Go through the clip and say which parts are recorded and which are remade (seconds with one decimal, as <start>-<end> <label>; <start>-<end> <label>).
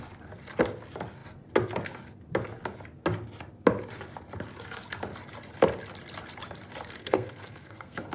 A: 0.0-7.0 recorded; 7.0-8.1 remade